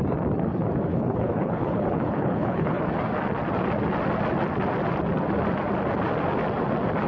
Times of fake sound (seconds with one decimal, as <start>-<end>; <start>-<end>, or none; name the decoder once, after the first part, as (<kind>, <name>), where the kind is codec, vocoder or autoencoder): 0.9-2.8 (codec, HILCodec)

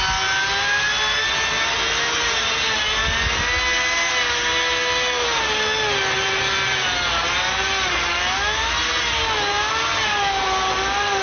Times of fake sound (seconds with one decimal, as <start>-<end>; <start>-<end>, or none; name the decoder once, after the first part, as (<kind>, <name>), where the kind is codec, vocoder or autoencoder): none